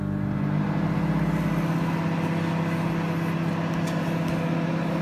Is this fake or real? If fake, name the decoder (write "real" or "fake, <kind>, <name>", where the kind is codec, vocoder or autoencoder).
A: real